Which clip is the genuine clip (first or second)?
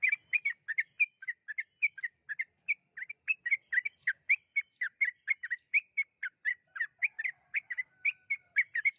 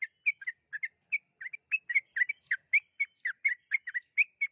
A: second